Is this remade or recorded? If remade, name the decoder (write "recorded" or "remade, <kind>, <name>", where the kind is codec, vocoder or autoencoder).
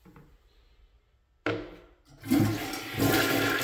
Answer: recorded